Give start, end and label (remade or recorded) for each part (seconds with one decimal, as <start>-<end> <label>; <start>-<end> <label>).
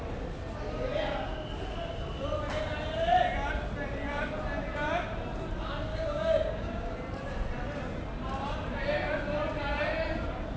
0.0-5.9 recorded; 5.9-6.9 remade; 6.9-10.6 recorded